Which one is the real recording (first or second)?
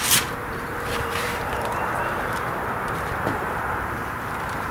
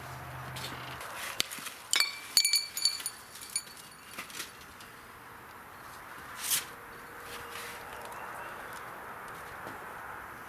second